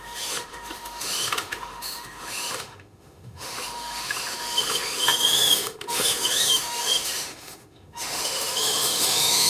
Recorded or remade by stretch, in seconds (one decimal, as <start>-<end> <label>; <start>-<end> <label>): 0.0-9.5 remade